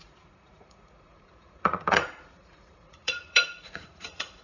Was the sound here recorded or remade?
remade